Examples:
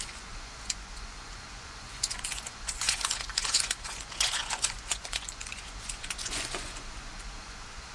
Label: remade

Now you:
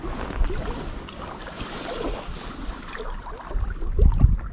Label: recorded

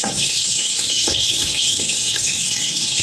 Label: remade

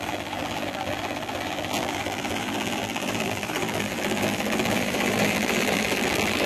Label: remade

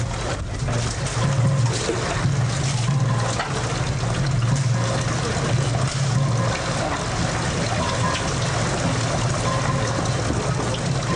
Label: recorded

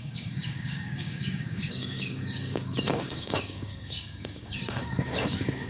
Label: remade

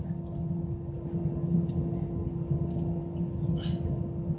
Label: recorded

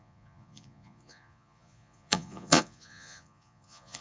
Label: remade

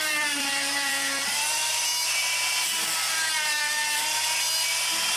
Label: remade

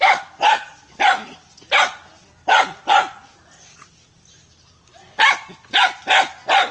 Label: recorded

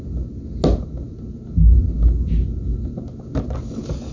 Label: recorded